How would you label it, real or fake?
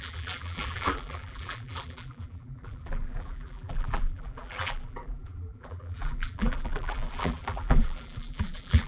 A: fake